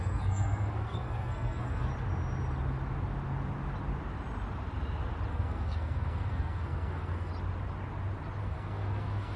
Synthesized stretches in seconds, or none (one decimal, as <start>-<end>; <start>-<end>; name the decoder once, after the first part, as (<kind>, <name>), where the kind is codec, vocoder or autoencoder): 0.0-1.9 (codec, SNAC); 5.3-7.3; 8.4-9.4